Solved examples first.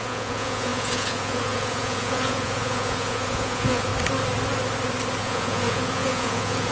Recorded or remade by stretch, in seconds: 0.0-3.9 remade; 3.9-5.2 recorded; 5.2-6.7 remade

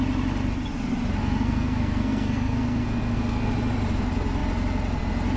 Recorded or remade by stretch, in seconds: 0.0-1.2 recorded; 1.2-3.5 remade; 3.5-5.4 recorded

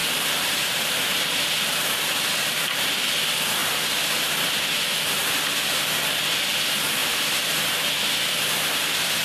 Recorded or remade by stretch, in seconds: 0.0-3.0 remade; 3.0-3.6 recorded; 3.6-4.1 remade; 4.1-9.2 recorded

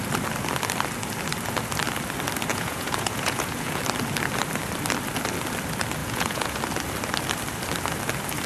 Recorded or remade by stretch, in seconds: 0.0-2.5 recorded; 2.5-3.8 remade; 3.8-6.0 recorded; 6.0-6.6 remade; 6.6-8.5 recorded

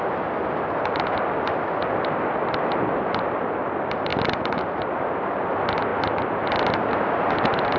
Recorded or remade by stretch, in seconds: 0.0-7.8 recorded

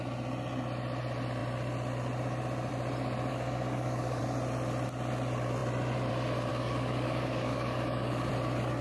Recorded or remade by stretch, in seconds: 0.0-3.3 recorded; 3.3-4.2 remade; 4.2-6.5 recorded; 6.5-8.3 remade; 8.3-8.8 recorded

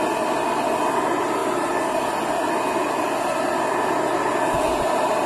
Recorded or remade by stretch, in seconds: 0.0-1.4 recorded; 1.4-2.1 remade; 2.1-5.3 recorded